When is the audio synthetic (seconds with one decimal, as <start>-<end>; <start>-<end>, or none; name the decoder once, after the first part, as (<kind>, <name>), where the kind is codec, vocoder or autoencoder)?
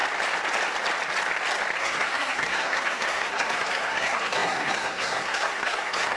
1.8-6.2 (codec, SNAC)